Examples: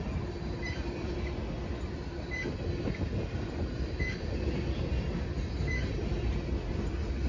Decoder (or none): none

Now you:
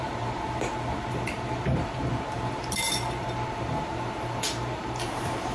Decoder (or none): vocoder, BigVGAN v2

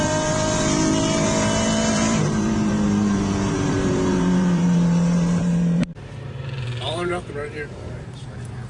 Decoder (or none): vocoder, BigVGAN v2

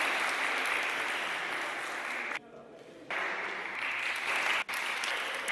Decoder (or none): none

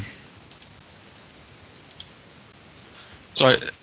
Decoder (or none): none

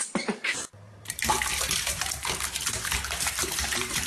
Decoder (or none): vocoder, BigVGAN v2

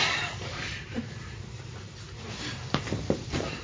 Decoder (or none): vocoder, BigVGAN v2